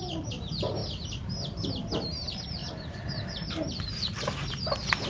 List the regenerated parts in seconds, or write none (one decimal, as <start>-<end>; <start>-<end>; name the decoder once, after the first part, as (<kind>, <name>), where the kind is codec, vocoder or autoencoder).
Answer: 0.0-0.8 (vocoder, BigVGAN v2); 1.9-5.1